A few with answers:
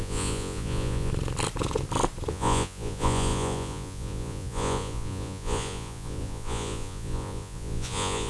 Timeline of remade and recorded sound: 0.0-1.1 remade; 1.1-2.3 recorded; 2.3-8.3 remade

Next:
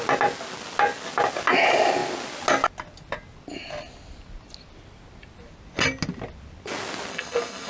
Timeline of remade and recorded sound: 0.0-7.1 recorded; 7.1-7.7 remade